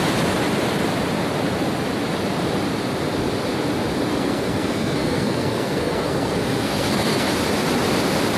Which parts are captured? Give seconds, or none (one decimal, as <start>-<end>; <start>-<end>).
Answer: 0.0-4.1; 7.3-8.4